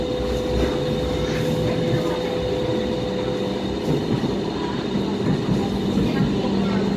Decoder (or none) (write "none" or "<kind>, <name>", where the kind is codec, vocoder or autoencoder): none